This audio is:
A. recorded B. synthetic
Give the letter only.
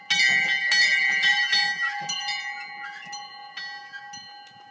A